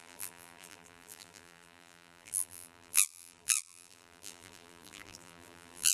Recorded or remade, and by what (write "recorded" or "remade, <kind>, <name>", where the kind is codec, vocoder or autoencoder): remade, vocoder, BigVGAN v2